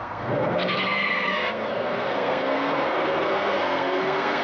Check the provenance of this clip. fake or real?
fake